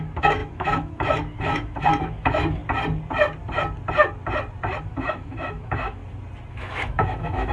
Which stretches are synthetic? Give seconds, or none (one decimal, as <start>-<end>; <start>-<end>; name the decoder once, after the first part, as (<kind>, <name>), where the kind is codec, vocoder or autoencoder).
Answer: 0.0-2.6 (autoencoder, DAC-VAE); 4.8-6.0; 6.5-7.5